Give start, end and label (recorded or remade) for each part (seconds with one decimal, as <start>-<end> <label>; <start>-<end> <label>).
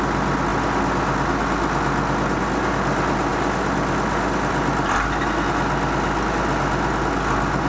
0.0-7.7 recorded